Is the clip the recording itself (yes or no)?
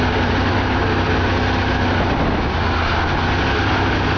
yes